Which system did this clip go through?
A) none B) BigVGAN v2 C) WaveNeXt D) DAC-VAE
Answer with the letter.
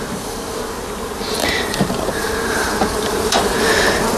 B